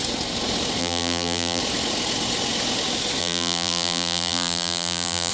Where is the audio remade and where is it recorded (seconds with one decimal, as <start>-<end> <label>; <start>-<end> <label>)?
0.0-0.8 recorded; 0.8-1.6 remade; 1.6-3.2 recorded; 3.2-5.3 remade